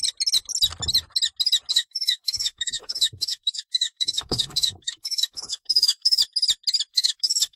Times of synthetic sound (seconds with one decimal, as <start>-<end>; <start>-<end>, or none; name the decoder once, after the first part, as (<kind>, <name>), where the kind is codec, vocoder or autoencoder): 1.7-6.2 (autoencoder, DAC-VAE); 6.9-7.6